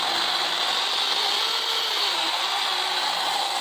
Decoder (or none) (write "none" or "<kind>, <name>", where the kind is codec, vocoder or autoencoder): none